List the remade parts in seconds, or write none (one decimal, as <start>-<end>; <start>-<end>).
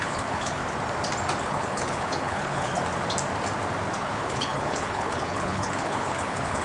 0.0-0.6; 1.4-2.7; 4.0-6.6